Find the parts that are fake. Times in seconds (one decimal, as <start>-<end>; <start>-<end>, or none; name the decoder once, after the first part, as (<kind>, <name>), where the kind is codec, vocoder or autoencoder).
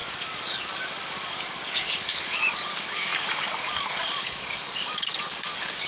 0.0-5.9 (codec, DAC)